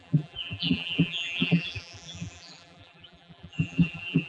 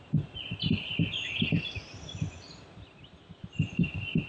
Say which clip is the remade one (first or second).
first